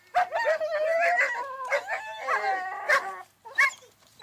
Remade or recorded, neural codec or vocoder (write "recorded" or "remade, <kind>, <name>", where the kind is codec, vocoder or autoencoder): recorded